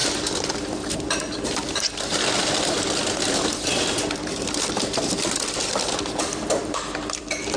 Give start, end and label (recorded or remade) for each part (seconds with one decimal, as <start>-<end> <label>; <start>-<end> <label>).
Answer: 0.0-7.6 remade